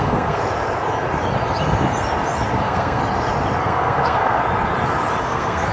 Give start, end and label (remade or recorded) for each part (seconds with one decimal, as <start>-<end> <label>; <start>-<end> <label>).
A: 0.0-0.4 remade; 0.4-2.6 recorded; 2.6-3.0 remade; 3.0-3.6 recorded; 3.6-4.4 remade; 4.4-5.2 recorded; 5.2-5.7 remade